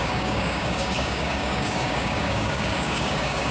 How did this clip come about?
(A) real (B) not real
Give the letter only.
B